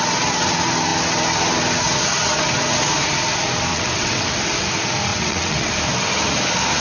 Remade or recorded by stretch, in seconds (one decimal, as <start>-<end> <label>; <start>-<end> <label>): 0.0-3.7 recorded; 3.7-4.3 remade; 4.3-5.1 recorded; 5.1-5.7 remade; 5.7-6.8 recorded